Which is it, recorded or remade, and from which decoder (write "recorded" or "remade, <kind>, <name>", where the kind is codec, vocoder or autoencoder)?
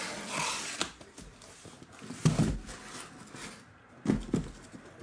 recorded